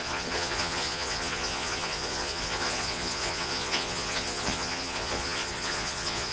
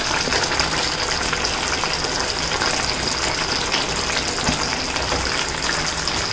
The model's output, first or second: first